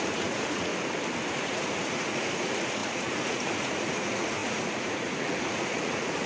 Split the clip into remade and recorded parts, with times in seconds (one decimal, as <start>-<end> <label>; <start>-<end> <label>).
0.0-0.7 remade; 0.7-1.3 recorded; 1.3-6.3 remade